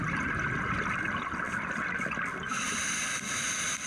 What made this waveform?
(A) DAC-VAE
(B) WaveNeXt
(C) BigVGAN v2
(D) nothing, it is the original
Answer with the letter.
D